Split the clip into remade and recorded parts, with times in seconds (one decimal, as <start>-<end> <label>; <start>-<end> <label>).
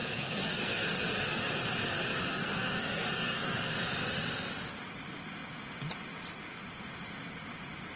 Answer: 0.0-1.5 remade; 1.5-2.1 recorded; 2.1-3.8 remade; 3.8-8.0 recorded